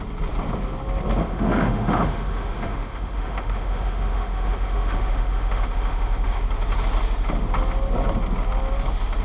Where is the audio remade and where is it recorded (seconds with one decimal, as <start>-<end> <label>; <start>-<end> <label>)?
0.0-1.2 recorded; 1.2-6.4 remade; 6.4-9.2 recorded